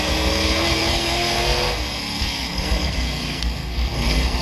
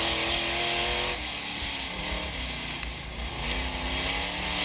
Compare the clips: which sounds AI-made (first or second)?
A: first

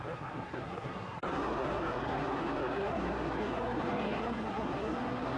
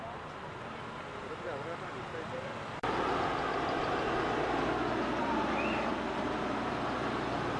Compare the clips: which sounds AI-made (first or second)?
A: first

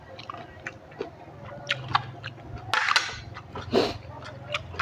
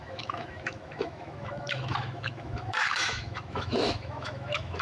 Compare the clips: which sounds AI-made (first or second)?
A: second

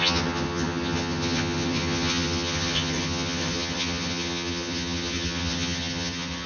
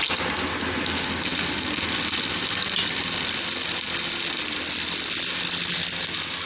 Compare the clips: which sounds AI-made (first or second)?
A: first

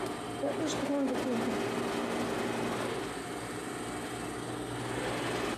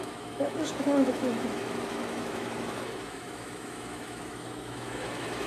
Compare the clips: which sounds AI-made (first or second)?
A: second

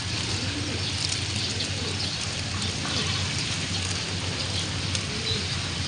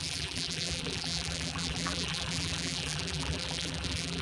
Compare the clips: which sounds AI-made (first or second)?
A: second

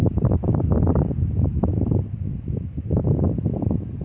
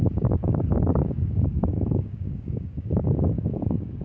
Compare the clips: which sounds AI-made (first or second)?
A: second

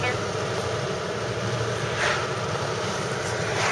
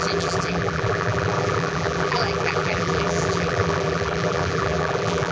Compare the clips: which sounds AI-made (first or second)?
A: second